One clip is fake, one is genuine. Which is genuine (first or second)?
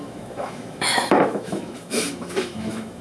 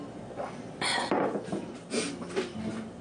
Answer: second